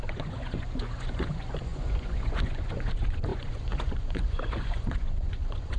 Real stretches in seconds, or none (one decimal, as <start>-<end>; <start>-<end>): none